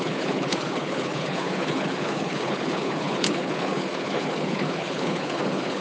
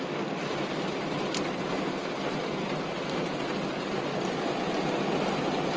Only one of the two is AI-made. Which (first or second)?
first